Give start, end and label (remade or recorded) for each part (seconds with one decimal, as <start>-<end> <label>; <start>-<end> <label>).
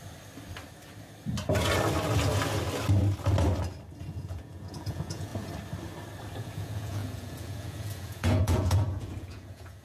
0.0-4.0 recorded; 4.0-5.3 remade; 5.3-6.4 recorded; 6.4-9.8 remade